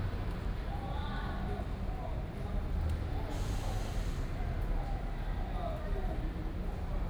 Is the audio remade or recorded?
recorded